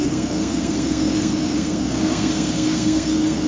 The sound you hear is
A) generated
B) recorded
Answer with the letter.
A